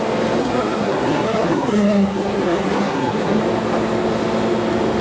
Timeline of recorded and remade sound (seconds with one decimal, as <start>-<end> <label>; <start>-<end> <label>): 0.0-0.4 recorded; 0.4-3.4 remade; 3.4-5.0 recorded